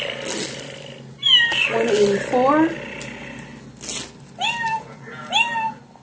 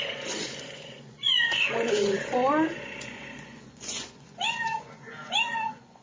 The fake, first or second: second